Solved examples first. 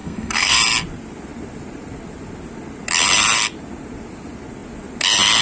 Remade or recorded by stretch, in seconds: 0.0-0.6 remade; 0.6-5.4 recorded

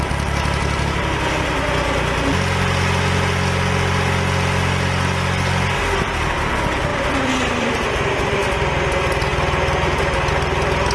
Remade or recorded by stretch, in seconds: 0.0-6.9 recorded; 6.9-8.0 remade; 8.0-10.9 recorded

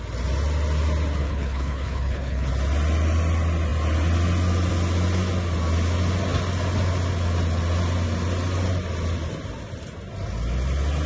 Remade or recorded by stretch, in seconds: 0.0-1.2 recorded; 1.2-2.5 remade; 2.5-11.1 recorded

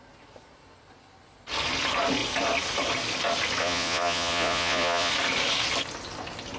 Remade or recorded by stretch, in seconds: 0.0-3.6 recorded; 3.6-5.1 remade; 5.1-6.6 recorded

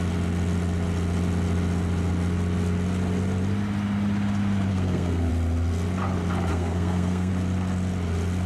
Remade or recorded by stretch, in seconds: 0.0-4.7 recorded; 4.7-5.3 remade; 5.3-6.5 recorded; 6.5-7.3 remade; 7.3-8.5 recorded

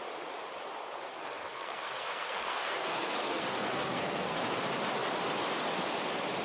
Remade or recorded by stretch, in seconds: 0.0-1.1 recorded; 1.1-4.4 remade; 4.4-6.4 recorded